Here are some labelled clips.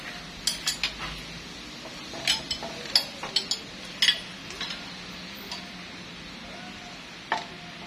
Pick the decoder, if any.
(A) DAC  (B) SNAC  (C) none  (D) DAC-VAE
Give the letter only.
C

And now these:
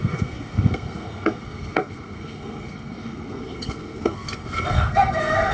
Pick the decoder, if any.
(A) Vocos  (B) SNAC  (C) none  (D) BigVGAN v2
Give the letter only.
B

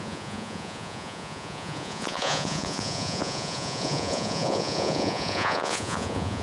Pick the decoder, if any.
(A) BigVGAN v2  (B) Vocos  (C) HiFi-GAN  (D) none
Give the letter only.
B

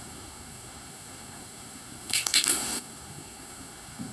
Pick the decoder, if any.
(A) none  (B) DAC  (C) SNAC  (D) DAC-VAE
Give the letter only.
C